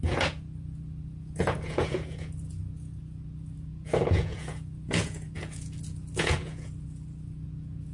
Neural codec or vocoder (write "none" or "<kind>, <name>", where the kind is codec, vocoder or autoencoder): vocoder, Vocos